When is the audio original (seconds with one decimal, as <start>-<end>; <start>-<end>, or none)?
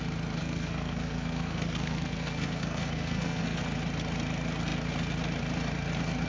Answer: 0.0-0.4; 3.6-6.3